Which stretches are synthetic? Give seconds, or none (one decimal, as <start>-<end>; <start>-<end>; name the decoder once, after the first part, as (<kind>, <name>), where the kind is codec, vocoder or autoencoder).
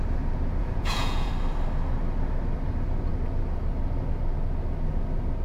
0.6-1.3 (vocoder, Vocos)